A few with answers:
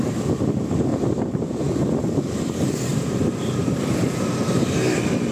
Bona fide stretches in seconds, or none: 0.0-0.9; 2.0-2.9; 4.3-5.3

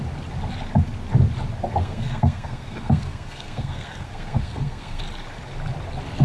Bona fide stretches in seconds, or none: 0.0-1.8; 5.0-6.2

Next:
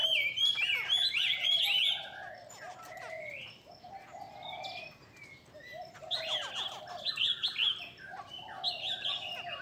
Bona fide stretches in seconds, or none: 0.0-9.6